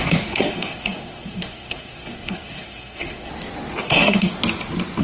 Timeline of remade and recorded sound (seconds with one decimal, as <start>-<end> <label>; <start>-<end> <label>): 0.0-3.3 remade; 3.3-3.8 recorded; 3.8-4.3 remade; 4.3-5.0 recorded